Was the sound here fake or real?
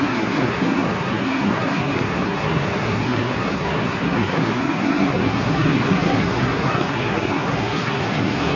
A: fake